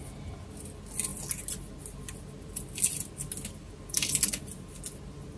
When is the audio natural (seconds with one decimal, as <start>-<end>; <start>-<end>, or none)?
0.0-5.4